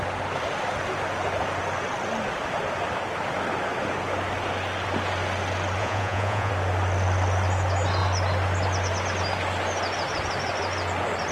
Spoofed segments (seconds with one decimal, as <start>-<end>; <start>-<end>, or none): 5.8-6.5